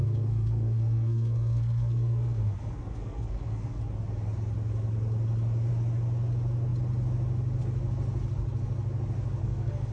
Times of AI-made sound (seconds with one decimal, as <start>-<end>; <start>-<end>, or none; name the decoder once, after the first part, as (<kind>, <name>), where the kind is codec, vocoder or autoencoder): 0.0-3.8 (codec, SNAC); 9.4-9.9

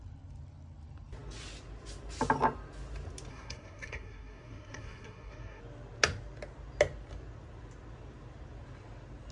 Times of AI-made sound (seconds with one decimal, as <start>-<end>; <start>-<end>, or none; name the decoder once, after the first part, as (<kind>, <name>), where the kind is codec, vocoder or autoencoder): 3.3-5.6 (codec, SNAC)

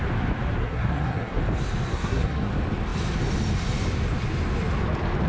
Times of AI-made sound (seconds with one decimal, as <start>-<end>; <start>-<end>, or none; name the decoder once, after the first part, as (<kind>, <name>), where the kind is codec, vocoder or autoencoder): 0.6-1.4 (codec, SNAC); 1.9-2.5

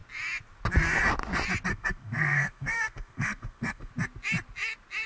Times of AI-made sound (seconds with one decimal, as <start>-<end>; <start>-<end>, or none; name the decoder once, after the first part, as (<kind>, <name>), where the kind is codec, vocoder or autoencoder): 1.7-3.9 (codec, SNAC)